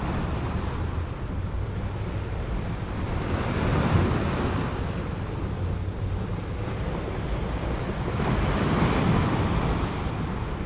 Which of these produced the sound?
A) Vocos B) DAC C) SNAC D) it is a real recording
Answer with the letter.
D